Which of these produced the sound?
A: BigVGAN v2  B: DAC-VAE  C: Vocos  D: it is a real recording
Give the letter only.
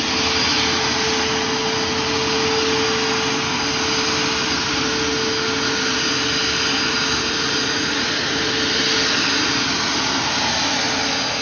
D